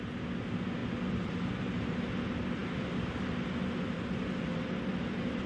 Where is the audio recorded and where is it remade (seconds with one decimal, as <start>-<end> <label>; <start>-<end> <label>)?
0.0-5.5 recorded